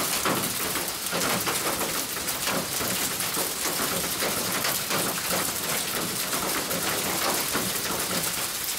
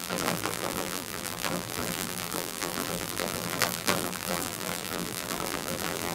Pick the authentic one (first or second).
first